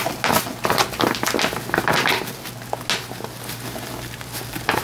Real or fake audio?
real